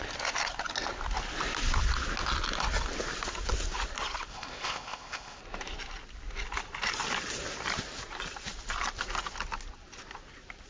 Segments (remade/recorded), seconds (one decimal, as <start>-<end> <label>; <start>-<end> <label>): 0.0-4.3 recorded; 4.3-5.4 remade; 5.4-10.7 recorded